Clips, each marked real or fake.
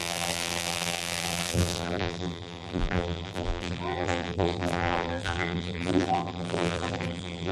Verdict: fake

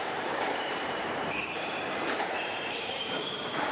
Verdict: fake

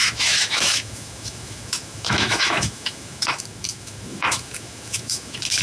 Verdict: fake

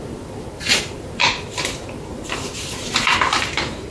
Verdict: fake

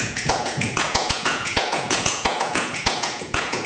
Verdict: fake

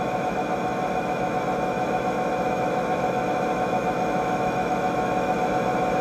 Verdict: fake